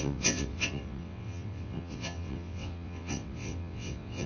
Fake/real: fake